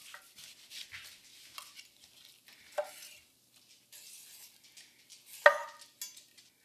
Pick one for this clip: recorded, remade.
recorded